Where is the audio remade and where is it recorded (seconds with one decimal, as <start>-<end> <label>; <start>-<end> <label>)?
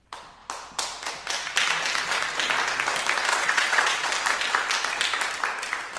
0.0-3.3 recorded; 3.3-4.1 remade; 4.1-6.0 recorded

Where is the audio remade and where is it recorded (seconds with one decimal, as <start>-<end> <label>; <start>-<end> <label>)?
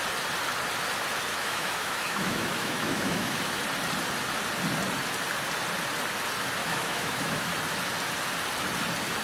0.0-1.3 recorded; 1.3-3.6 remade; 3.6-6.6 recorded; 6.6-7.5 remade; 7.5-9.2 recorded